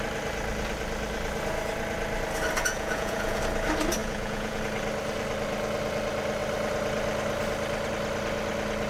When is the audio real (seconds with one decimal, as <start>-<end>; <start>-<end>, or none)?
0.0-2.7; 3.4-4.0; 4.6-8.9